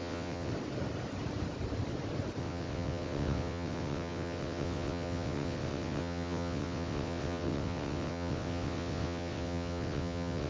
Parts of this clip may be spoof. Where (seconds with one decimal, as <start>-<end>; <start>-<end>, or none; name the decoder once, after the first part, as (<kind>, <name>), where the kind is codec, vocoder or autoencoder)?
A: 0.0-0.5 (vocoder, WaveNeXt); 2.4-10.5